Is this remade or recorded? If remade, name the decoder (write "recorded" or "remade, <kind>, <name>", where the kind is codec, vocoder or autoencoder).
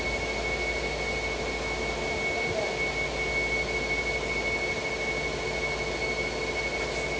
recorded